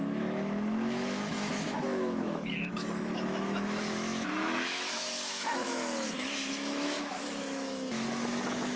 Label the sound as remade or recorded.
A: remade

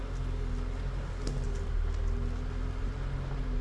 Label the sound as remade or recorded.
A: recorded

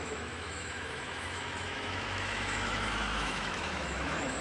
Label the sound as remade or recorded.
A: remade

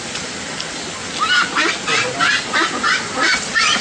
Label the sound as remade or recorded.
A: recorded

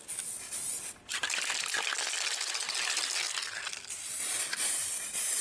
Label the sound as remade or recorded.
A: recorded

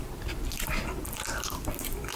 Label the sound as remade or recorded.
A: recorded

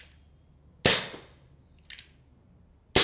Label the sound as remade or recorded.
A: recorded